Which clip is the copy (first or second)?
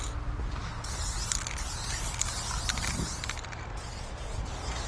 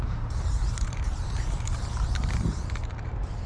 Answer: second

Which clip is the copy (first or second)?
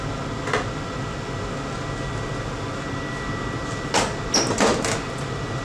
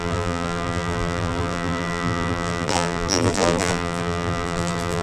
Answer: second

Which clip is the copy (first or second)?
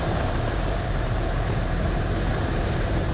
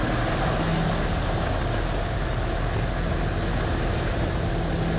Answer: first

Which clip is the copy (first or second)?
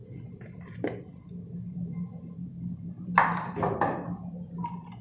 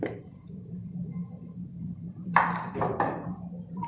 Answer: second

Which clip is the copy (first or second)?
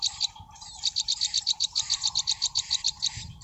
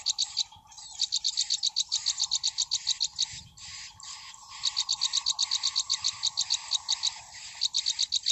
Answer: first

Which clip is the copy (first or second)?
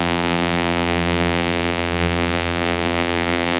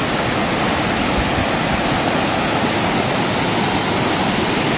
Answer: first